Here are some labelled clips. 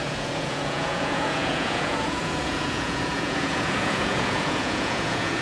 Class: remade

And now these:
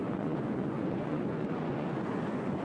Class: remade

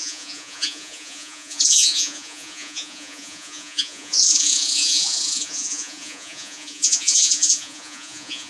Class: remade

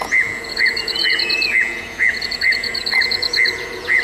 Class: remade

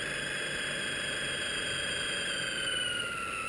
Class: recorded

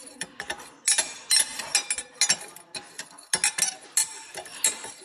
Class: recorded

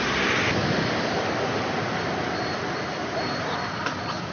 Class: recorded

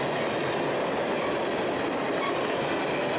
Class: recorded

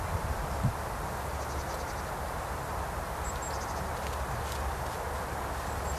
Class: recorded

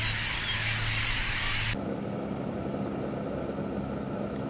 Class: recorded